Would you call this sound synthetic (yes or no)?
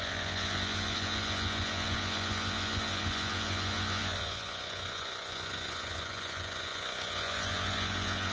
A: yes